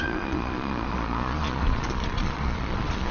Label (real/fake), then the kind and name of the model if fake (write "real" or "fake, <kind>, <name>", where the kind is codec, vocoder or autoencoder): fake, vocoder, Vocos